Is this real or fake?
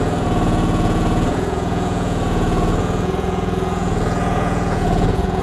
fake